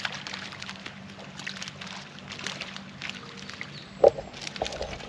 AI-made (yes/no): no